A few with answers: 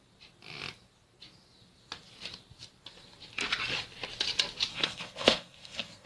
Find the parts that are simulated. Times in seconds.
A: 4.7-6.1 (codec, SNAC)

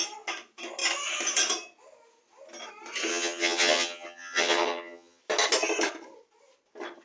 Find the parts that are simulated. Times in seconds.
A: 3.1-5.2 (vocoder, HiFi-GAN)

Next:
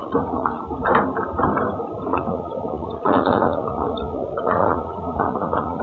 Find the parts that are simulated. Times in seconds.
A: 0.0-0.6 (vocoder, Vocos); 2.1-5.8